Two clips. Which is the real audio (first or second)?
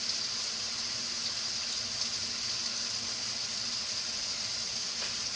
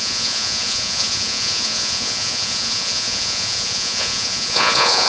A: first